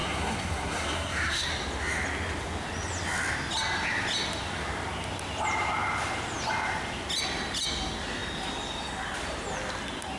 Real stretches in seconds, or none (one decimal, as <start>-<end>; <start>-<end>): 1.5-10.2